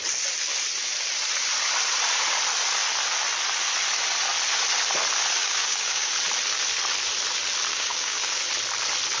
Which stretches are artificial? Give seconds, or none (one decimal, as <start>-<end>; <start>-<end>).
5.4-6.1; 7.7-8.4